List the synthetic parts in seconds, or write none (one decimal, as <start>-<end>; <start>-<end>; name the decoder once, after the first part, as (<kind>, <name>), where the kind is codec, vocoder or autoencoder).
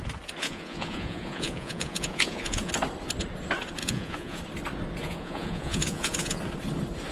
0.4-2.7 (vocoder, Vocos); 3.8-4.4; 5.0-6.4